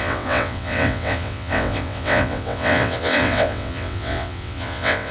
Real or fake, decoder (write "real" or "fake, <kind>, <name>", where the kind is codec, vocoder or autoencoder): fake, vocoder, WaveNeXt